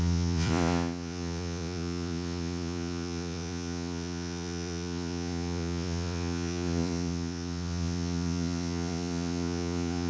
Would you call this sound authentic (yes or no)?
no